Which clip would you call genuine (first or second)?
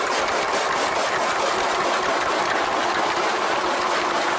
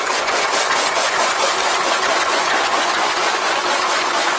first